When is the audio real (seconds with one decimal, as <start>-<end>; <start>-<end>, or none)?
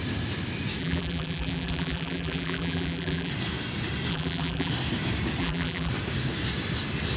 0.0-0.8; 3.3-4.1; 4.7-5.4; 5.9-7.2